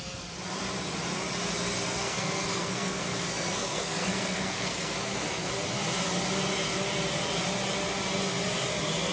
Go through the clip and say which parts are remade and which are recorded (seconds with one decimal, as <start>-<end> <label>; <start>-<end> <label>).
0.0-2.0 recorded; 2.0-5.5 remade; 5.5-9.1 recorded